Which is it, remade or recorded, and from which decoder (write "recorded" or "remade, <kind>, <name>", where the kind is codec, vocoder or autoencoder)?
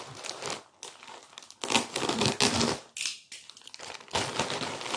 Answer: recorded